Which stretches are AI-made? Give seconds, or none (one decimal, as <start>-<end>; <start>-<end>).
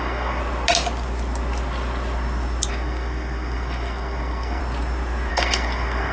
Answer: 0.0-0.4; 2.7-4.6; 5.3-6.1